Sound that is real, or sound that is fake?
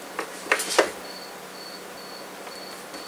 real